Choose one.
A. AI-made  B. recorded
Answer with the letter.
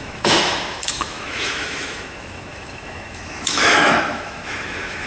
A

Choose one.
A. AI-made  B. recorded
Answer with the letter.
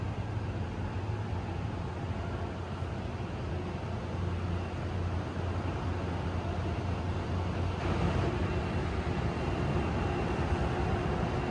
B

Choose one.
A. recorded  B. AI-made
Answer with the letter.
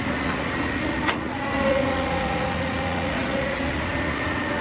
B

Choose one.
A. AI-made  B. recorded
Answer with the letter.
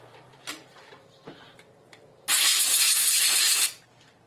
A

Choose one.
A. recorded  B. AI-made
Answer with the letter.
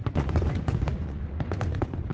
B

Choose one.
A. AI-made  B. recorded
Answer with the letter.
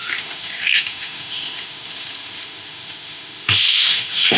A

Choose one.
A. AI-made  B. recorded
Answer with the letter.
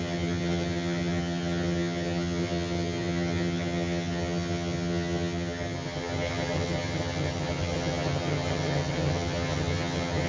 A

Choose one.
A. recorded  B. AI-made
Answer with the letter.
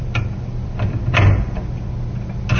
A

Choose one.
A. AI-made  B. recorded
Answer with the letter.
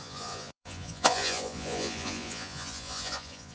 A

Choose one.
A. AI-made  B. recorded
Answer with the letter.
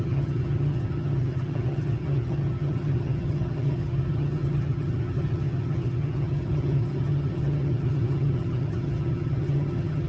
A